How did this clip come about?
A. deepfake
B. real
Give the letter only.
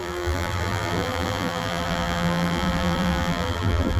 A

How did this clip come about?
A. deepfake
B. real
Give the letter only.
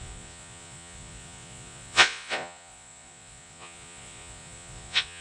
A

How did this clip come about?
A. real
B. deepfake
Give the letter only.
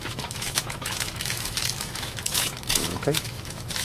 B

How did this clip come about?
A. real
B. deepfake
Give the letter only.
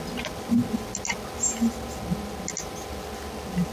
A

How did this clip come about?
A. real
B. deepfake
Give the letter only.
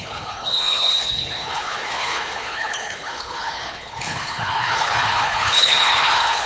B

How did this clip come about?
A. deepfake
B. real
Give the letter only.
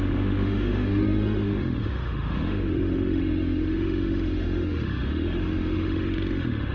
A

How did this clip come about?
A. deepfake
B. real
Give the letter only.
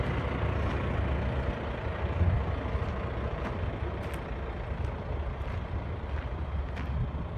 B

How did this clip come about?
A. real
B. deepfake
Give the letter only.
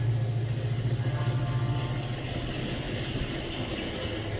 A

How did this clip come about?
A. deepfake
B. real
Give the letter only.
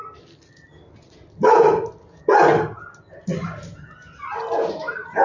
B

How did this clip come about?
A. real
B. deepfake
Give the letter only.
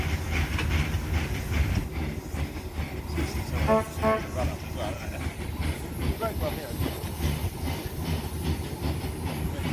A